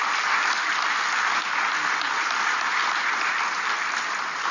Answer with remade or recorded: recorded